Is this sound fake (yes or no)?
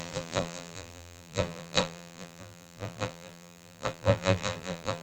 yes